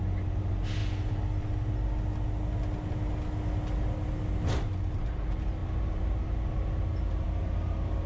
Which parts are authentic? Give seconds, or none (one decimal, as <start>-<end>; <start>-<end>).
0.0-8.1